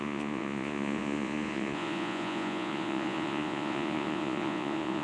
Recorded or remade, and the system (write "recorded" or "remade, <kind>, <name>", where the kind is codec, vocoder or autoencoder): remade, vocoder, Vocos